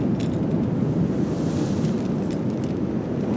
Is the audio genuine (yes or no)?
yes